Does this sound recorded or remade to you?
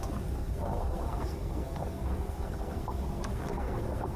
remade